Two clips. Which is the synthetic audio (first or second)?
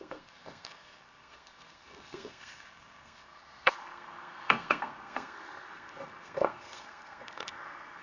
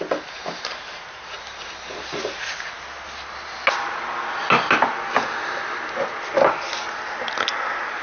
first